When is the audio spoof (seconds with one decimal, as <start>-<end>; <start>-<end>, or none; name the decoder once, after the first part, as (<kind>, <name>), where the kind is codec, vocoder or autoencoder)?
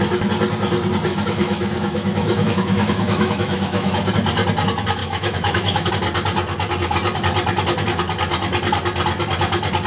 1.1-4.1 (autoencoder, DAC-VAE); 5.0-5.9